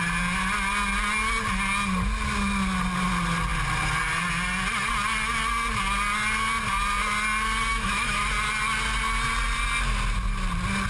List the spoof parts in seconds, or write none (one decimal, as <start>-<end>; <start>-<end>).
7.7-8.3